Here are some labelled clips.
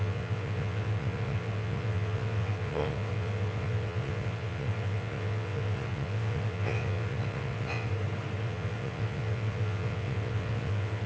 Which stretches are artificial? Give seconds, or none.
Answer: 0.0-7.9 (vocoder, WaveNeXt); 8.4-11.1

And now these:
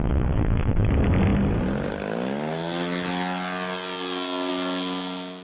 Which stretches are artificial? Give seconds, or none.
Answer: 0.0-0.9 (vocoder, WaveNeXt)

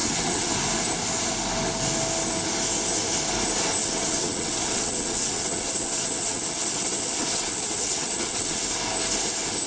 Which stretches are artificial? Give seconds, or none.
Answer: 0.0-0.5 (vocoder, WaveNeXt); 3.8-8.6

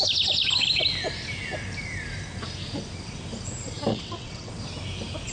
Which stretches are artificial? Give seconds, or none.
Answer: 3.9-4.5 (vocoder, WaveNeXt)

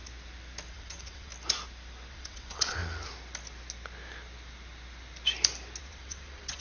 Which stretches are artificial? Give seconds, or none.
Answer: 0.7-1.3 (vocoder, WaveNeXt); 2.1-2.8; 5.8-6.6

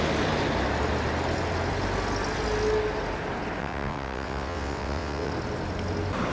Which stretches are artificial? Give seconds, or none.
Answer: 3.6-5.3 (vocoder, WaveNeXt)

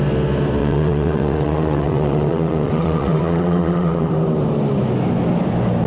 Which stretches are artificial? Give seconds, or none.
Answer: 0.6-4.1 (vocoder, WaveNeXt)

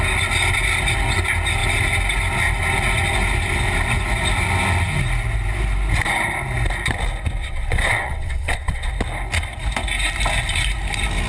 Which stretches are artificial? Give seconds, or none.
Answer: 7.4-8.9 (vocoder, WaveNeXt)